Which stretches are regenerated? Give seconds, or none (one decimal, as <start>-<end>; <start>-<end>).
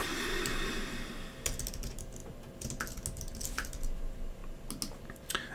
none